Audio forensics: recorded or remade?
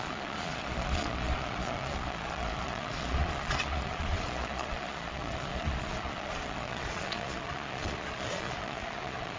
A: remade